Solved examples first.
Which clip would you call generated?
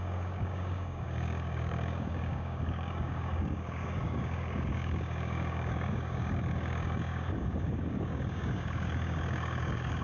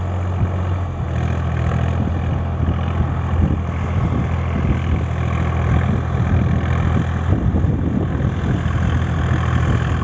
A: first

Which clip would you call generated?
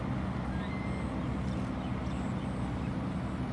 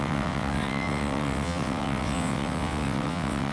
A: second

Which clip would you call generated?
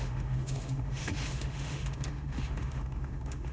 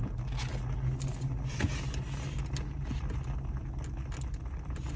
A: first